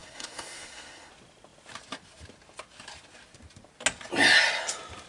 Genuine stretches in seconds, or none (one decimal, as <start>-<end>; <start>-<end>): 1.1-5.1